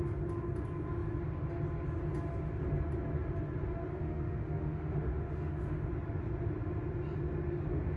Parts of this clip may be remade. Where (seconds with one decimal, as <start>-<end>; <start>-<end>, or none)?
3.9-5.9